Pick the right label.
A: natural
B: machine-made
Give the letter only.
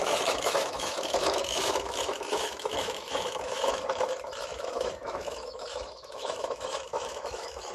B